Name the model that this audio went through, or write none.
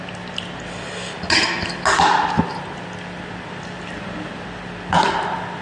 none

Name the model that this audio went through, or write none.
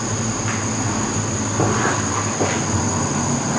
none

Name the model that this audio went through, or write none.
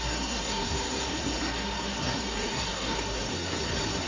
codec, SNAC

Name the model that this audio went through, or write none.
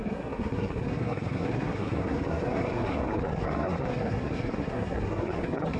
codec, SNAC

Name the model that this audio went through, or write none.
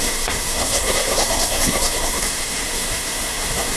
codec, SNAC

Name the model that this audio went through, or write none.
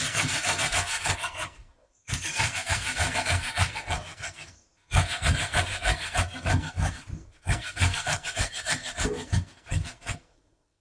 codec, SNAC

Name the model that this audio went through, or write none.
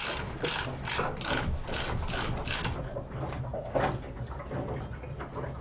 none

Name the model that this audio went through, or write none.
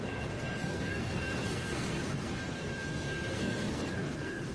codec, SNAC